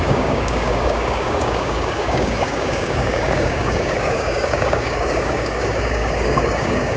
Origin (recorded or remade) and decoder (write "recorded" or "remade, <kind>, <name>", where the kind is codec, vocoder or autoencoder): remade, codec, DAC